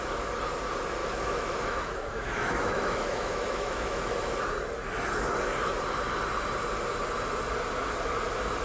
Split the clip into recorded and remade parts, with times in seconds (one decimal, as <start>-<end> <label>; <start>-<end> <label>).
0.0-1.0 recorded; 1.0-4.0 remade; 4.0-8.6 recorded